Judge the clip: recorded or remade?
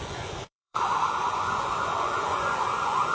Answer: remade